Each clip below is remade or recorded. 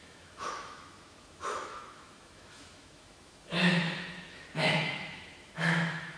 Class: remade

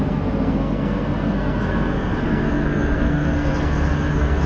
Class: remade